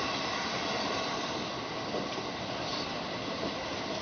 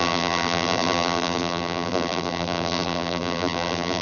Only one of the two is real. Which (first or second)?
first